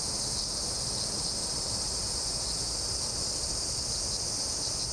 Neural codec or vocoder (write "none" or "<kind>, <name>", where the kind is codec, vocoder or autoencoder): none